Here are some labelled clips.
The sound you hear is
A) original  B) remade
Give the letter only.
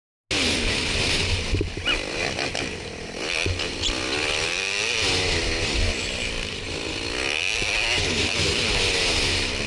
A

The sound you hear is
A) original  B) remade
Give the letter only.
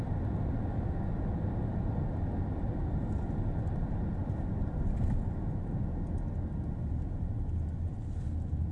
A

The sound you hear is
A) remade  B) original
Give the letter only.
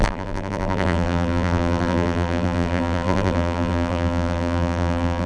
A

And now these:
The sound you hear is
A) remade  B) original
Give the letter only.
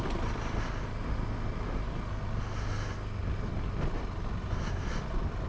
B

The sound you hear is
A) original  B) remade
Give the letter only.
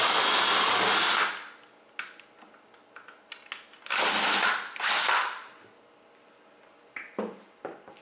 A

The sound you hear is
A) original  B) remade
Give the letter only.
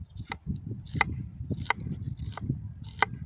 A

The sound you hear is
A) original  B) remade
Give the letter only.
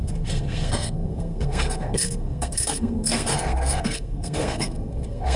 B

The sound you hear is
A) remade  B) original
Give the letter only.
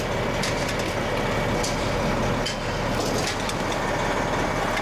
B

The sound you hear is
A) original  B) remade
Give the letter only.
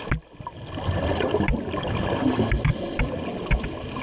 A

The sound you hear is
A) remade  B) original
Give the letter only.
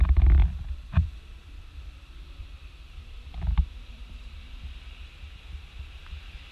A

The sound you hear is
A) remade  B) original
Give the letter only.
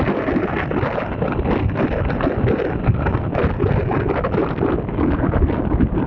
B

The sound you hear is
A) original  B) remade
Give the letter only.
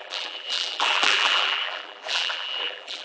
B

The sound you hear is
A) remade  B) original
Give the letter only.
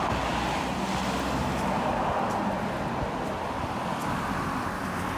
B